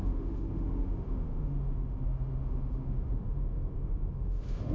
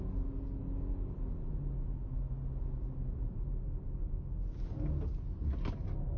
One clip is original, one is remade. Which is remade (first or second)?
first